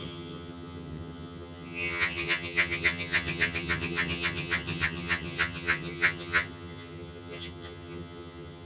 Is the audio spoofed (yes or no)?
yes